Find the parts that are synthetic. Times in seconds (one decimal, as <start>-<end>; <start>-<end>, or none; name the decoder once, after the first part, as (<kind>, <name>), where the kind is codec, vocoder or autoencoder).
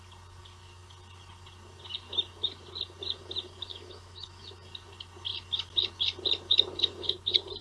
3.7-4.5 (autoencoder, DAC-VAE)